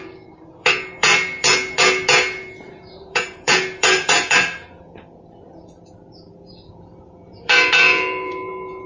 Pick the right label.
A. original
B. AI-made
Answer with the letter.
B